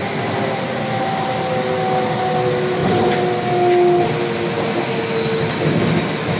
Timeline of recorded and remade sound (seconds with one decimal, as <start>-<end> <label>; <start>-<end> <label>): 0.0-6.4 recorded